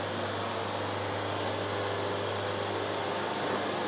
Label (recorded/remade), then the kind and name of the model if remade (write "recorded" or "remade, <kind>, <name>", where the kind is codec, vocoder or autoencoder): recorded